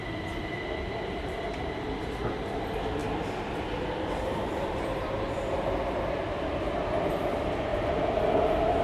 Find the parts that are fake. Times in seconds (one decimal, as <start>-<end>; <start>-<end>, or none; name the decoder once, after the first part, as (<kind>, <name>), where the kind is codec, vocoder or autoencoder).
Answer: none